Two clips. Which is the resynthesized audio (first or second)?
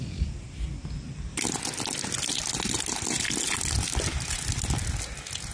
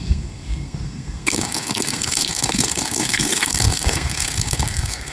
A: second